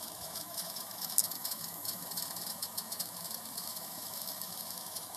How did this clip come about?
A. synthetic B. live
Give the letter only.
A